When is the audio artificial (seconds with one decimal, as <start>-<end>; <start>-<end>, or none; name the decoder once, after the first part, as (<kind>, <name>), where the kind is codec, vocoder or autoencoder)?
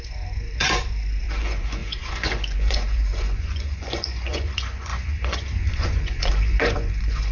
0.0-7.3 (vocoder, Vocos)